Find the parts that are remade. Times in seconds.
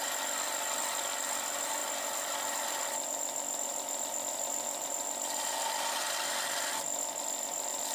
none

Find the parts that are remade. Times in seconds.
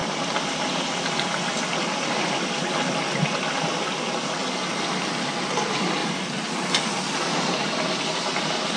0.0-2.8 (vocoder, BigVGAN v2); 4.4-5.0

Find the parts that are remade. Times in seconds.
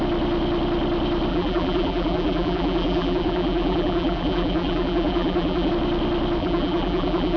1.3-5.7 (vocoder, BigVGAN v2); 6.4-7.4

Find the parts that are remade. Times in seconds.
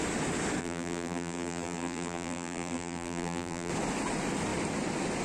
0.6-3.7 (vocoder, BigVGAN v2)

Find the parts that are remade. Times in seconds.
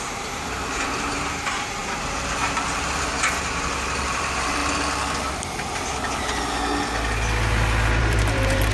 0.0-4.6 (vocoder, BigVGAN v2); 8.0-8.7